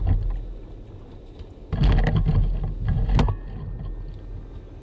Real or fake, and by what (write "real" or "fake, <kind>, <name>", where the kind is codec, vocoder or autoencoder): real